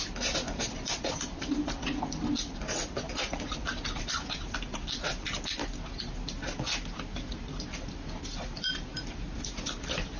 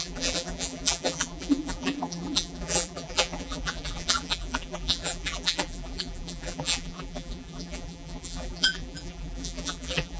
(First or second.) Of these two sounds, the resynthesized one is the second